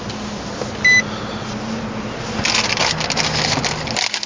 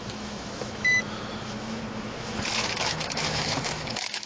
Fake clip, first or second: second